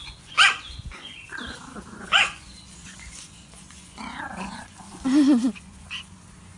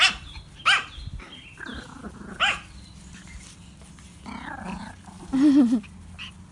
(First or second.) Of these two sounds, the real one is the second